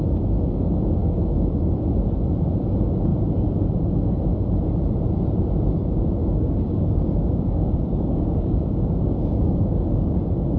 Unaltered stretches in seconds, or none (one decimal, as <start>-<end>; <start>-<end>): 0.0-1.0; 1.7-6.2; 10.2-10.6